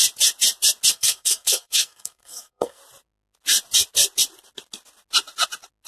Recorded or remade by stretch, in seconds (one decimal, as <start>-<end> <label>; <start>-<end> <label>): 0.0-0.9 recorded; 0.9-2.8 remade; 2.8-5.9 recorded